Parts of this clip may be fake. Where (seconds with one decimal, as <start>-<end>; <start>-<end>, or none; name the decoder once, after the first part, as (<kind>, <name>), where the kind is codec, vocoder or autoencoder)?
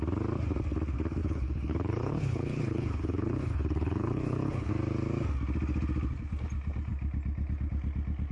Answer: 1.2-4.7 (codec, HILCodec)